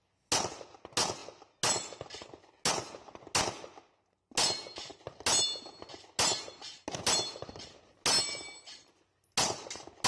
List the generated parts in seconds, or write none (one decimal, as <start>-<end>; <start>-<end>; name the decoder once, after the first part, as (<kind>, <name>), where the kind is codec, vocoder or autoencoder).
none